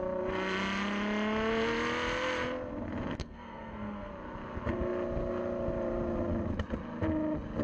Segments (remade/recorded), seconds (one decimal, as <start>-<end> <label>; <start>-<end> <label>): 0.0-3.2 recorded; 3.2-4.1 remade; 4.1-7.6 recorded